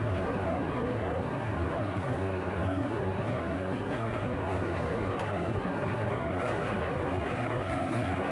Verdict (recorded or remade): remade